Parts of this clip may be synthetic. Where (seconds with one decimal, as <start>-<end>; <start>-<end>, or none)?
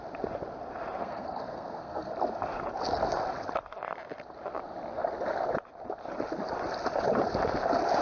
1.0-2.1